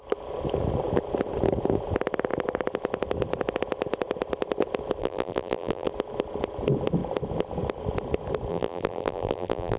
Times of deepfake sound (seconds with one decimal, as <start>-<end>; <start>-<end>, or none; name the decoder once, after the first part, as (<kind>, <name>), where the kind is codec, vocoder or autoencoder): 5.0-5.9 (vocoder, BigVGAN v2); 8.5-9.8

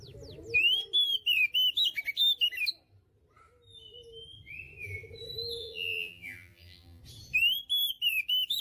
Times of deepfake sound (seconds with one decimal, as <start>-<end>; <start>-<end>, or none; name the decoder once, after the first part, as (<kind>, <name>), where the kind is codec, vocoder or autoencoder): 5.6-7.0 (vocoder, BigVGAN v2)

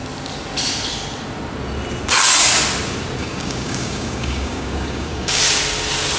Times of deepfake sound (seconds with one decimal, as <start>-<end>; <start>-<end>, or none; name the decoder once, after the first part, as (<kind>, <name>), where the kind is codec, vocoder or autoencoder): 3.2-5.4 (codec, DAC)

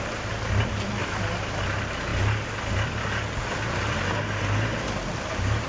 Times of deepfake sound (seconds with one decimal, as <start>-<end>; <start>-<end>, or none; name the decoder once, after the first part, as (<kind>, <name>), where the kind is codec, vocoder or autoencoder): none

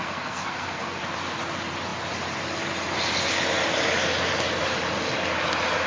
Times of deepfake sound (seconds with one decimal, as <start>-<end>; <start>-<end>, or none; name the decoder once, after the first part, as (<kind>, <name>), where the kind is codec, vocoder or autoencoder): 0.0-1.0 (codec, SNAC)